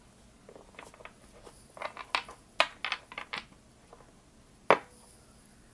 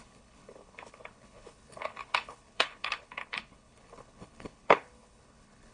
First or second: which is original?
first